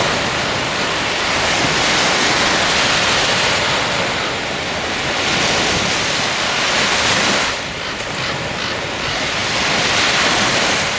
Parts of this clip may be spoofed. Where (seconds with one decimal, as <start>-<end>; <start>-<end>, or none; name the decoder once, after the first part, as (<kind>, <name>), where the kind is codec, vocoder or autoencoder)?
none